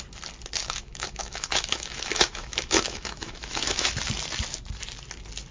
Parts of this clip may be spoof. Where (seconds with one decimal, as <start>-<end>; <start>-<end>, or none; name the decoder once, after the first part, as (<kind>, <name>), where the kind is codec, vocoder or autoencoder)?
0.6-3.9 (autoencoder, DAC-VAE)